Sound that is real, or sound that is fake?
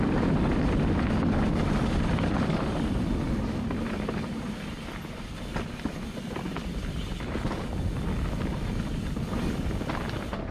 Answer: real